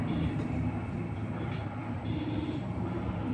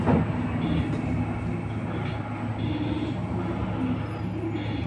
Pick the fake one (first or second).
first